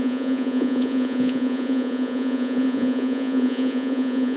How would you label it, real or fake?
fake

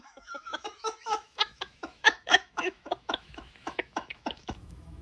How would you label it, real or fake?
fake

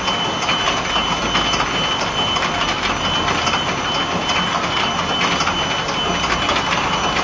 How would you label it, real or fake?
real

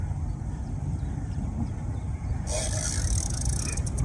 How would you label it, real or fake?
real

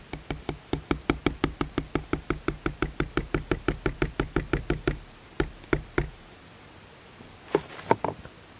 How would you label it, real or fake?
real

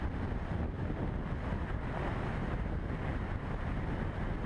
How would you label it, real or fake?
real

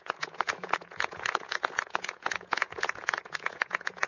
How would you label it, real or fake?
fake